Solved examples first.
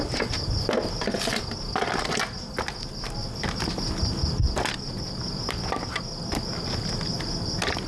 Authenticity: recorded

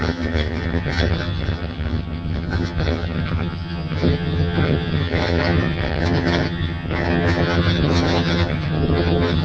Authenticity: remade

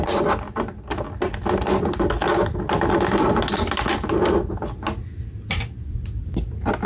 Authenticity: recorded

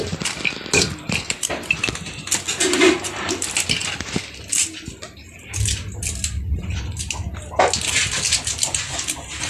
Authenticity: recorded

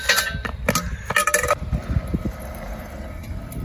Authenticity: recorded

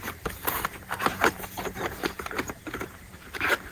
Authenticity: remade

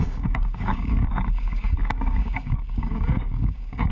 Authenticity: remade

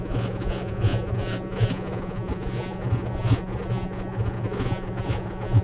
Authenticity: remade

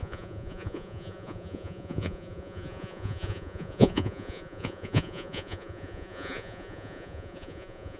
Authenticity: remade